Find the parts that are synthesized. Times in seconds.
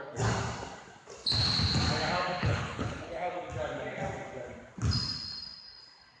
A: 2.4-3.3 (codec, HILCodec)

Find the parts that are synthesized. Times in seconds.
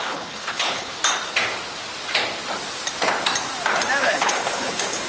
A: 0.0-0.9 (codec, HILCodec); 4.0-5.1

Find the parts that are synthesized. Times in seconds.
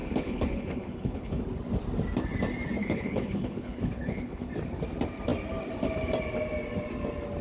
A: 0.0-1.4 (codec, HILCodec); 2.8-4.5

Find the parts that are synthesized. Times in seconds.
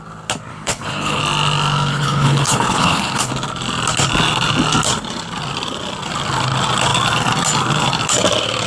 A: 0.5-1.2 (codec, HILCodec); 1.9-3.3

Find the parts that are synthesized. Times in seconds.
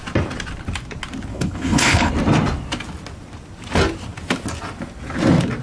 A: 1.3-2.1 (codec, HILCodec)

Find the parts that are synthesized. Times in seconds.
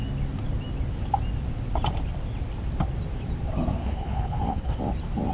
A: 3.8-4.8 (codec, HILCodec)